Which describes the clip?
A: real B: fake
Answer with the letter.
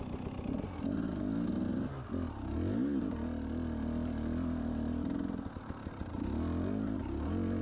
A